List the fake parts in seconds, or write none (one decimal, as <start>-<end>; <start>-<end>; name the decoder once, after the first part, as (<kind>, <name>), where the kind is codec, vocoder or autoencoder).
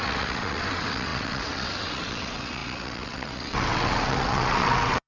0.0-5.1 (vocoder, WaveNeXt)